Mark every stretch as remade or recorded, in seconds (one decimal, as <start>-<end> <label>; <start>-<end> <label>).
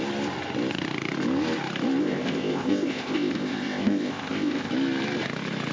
0.0-2.0 recorded; 2.0-4.7 remade; 4.7-5.7 recorded